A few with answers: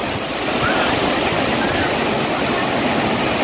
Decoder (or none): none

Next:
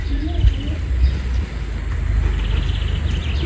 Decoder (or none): none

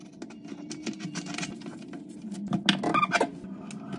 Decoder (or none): none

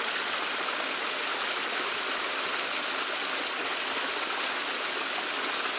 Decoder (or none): none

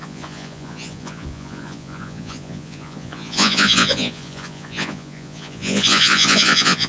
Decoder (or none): vocoder, Vocos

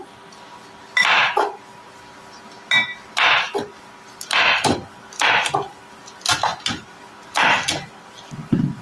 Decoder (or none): none